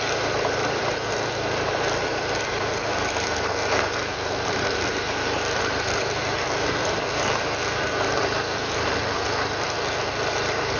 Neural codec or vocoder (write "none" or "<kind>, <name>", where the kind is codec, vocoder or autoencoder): vocoder, BigVGAN v2